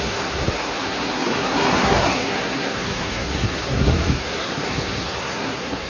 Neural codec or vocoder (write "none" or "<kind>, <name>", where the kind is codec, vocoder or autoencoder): codec, SNAC